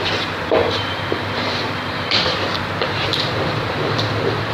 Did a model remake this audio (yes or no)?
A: yes